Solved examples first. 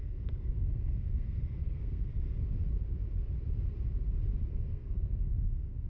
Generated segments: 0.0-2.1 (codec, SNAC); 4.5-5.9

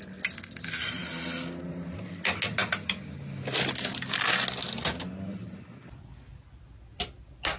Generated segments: none

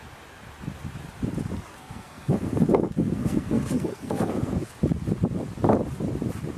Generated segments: 1.7-4.7 (codec, SNAC)

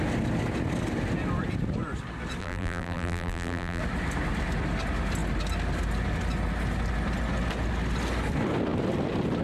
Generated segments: 2.4-3.8 (vocoder, BigVGAN v2)

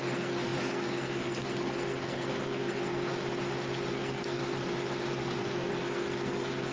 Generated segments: 0.0-3.1 (codec, SNAC); 3.9-4.4; 5.4-6.7

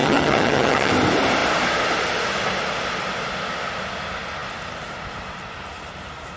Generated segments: 0.0-0.9 (vocoder, HiFi-GAN)

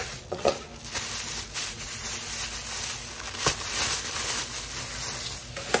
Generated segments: 0.0-0.7 (vocoder, Vocos); 1.7-2.1